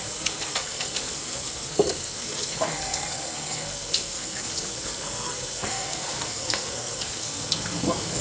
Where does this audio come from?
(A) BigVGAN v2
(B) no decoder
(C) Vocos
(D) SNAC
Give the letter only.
D